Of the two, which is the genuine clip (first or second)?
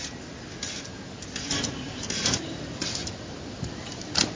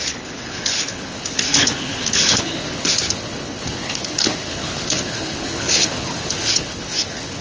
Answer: first